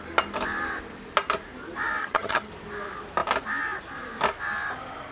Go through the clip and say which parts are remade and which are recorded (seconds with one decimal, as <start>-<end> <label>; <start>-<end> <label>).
0.0-2.0 recorded; 2.0-2.5 remade; 2.5-5.1 recorded